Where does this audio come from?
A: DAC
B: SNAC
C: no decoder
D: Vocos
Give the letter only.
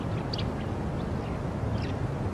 C